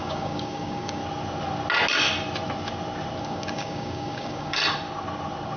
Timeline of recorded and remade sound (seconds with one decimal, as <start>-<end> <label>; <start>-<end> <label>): 0.0-1.0 remade; 1.0-3.2 recorded; 3.2-4.6 remade; 4.6-5.6 recorded